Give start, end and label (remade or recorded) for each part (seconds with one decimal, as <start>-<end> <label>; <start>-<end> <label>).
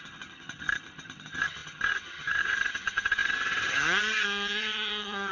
0.0-5.3 remade